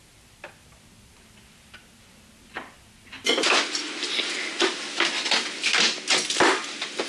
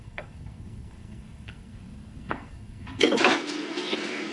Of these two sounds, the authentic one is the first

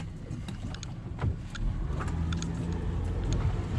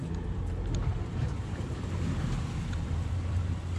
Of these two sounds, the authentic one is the first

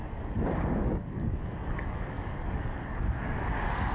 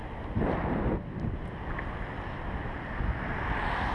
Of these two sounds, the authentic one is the second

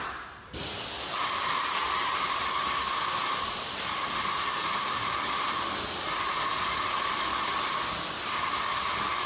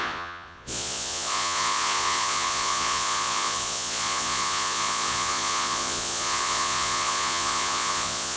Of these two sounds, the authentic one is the first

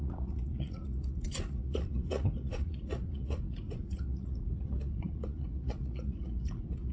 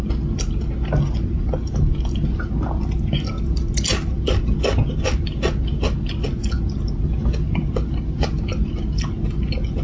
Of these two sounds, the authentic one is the second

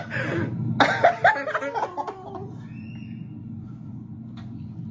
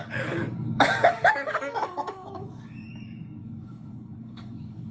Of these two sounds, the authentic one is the first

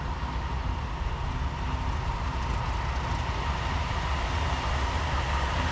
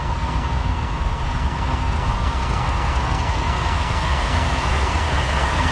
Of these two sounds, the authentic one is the first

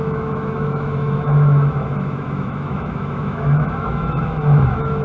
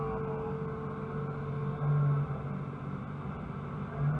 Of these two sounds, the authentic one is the second